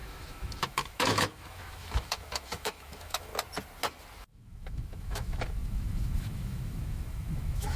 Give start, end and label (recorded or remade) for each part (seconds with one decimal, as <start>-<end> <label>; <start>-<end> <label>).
0.0-3.3 remade; 3.3-4.2 recorded; 4.2-7.8 remade